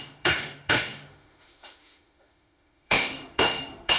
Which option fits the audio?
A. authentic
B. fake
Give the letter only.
B